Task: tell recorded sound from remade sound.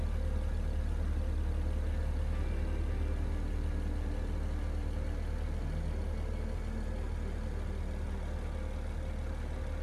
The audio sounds recorded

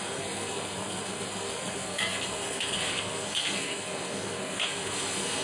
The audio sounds remade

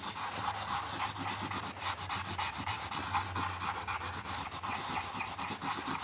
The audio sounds recorded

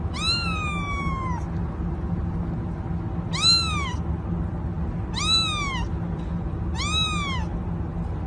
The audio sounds recorded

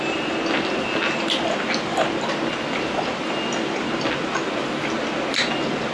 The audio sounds recorded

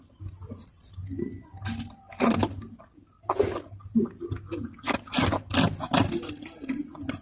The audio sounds recorded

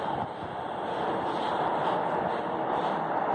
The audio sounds recorded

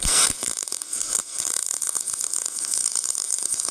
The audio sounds remade